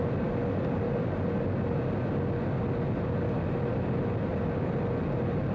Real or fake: real